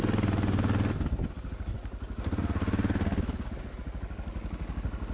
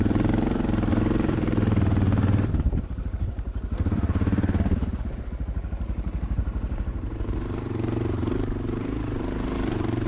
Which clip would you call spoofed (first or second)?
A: second